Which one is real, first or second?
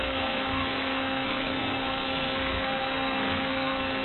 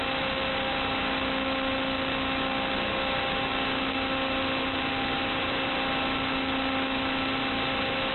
second